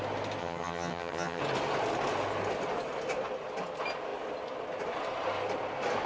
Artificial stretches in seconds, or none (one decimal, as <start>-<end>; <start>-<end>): 0.4-1.4